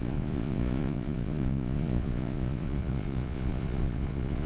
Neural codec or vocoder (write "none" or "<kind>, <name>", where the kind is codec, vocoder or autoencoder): vocoder, Vocos